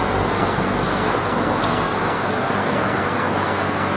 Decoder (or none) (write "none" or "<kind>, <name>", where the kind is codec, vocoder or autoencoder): codec, SNAC